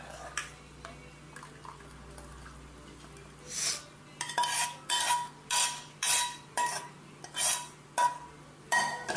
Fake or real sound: real